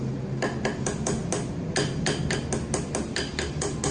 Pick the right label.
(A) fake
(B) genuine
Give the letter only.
B